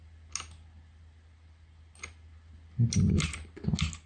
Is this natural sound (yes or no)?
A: yes